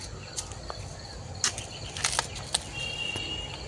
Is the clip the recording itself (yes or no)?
yes